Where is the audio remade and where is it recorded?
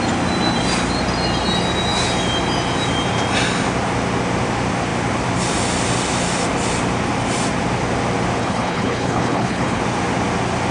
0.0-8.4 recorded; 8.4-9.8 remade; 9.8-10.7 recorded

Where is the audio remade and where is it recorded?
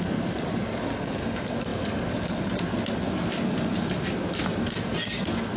0.0-5.6 recorded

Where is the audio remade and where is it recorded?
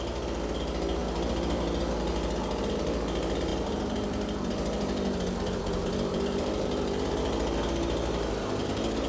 0.0-3.5 recorded; 3.5-7.2 remade; 7.2-9.1 recorded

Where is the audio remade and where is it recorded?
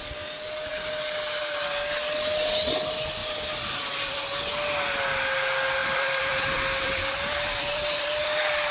0.0-3.2 recorded; 3.2-4.2 remade; 4.2-5.8 recorded; 5.8-8.7 remade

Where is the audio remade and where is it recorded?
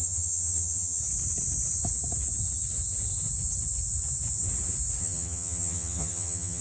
0.0-1.0 remade; 1.0-5.0 recorded; 5.0-6.6 remade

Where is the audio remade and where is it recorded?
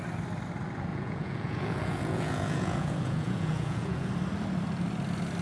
0.0-0.9 recorded; 0.9-4.1 remade; 4.1-5.4 recorded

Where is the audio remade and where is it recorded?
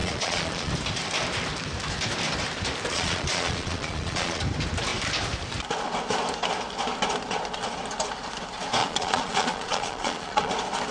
0.0-0.7 remade; 0.7-2.9 recorded; 2.9-4.4 remade; 4.4-8.8 recorded; 8.8-10.5 remade; 10.5-10.9 recorded